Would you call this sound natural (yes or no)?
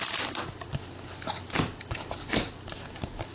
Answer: yes